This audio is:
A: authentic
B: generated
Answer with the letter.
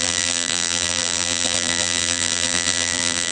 B